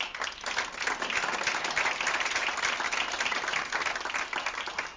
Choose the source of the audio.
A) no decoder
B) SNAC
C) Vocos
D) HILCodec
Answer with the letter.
A